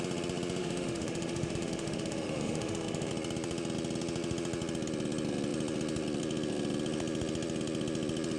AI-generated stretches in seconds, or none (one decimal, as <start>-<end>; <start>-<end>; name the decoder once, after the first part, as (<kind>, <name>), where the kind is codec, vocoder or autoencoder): 0.6-3.1 (autoencoder, DAC-VAE)